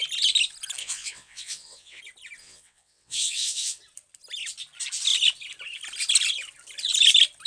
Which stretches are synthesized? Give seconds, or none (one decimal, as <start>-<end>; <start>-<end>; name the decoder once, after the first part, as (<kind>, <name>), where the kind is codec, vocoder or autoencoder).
0.8-2.0 (vocoder, WaveNeXt); 2.4-3.8